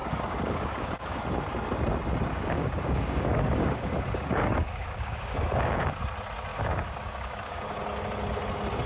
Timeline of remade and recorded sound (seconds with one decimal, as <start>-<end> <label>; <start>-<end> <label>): 0.0-1.2 remade; 1.2-2.3 recorded; 2.3-6.0 remade; 6.0-6.5 recorded; 6.5-7.8 remade; 7.8-8.9 recorded